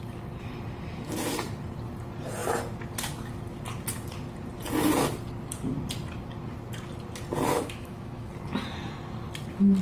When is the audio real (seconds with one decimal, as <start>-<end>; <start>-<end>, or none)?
0.0-7.5; 8.3-9.8